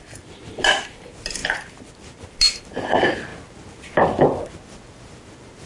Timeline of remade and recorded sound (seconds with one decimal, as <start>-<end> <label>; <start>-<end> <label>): 0.0-5.7 recorded